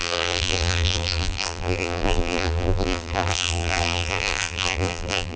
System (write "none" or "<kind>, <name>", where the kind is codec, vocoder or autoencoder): vocoder, BigVGAN v2